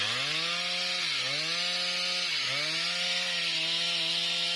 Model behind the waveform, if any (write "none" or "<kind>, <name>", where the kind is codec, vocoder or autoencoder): none